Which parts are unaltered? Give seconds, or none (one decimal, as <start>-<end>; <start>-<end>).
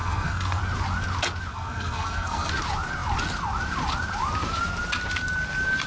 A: 0.6-1.5; 2.5-5.9